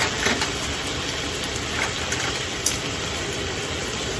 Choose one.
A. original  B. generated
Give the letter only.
B